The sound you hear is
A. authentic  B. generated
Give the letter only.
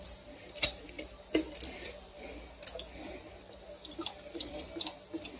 B